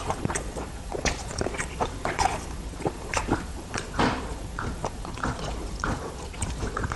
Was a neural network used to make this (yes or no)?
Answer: yes